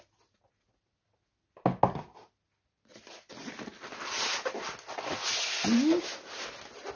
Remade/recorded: recorded